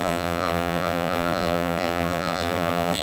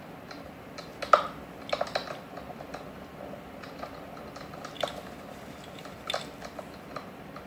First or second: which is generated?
first